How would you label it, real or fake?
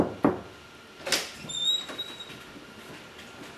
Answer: real